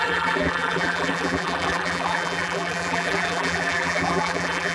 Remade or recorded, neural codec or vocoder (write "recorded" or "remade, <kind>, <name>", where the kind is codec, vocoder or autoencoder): remade, vocoder, BigVGAN v2